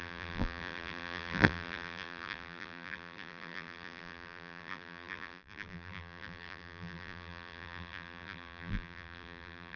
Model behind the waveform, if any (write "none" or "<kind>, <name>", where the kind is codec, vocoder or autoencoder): vocoder, BigVGAN v2